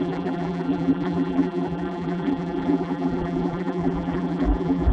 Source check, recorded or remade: remade